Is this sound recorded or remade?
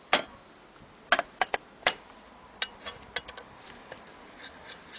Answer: recorded